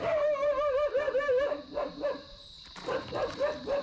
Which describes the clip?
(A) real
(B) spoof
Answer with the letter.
B